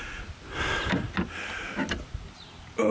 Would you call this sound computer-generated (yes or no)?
no